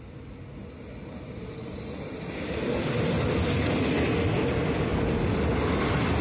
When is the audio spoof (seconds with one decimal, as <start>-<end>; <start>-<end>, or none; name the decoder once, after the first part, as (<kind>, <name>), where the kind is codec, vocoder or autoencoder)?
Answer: none